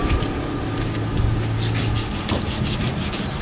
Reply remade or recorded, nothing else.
recorded